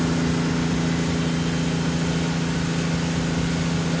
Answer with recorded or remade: recorded